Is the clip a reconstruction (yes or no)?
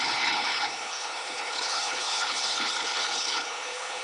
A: yes